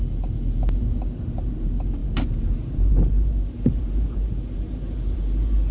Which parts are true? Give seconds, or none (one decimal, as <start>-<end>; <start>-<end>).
none